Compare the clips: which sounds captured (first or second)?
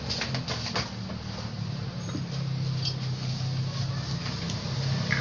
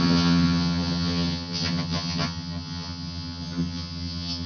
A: first